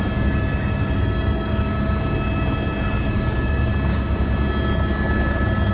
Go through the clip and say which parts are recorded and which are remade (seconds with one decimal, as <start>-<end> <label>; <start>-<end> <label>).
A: 0.0-1.7 remade; 1.7-2.9 recorded; 2.9-3.7 remade; 3.7-5.7 recorded